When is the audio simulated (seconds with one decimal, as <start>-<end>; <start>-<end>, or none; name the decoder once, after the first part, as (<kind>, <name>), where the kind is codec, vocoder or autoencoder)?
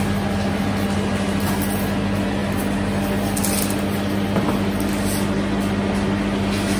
none